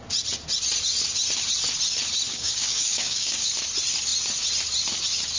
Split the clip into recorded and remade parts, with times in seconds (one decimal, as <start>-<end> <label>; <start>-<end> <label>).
0.0-2.3 recorded; 2.3-3.5 remade; 3.5-5.4 recorded